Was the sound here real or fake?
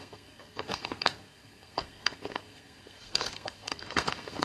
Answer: fake